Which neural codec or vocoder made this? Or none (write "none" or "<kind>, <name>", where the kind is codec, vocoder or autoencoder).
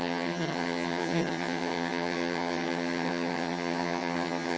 vocoder, HiFi-GAN